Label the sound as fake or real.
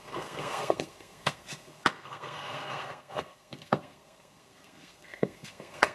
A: fake